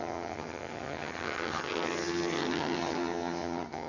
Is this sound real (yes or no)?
no